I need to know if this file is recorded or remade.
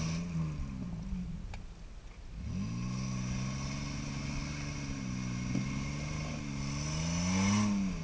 recorded